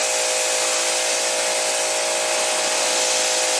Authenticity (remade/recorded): recorded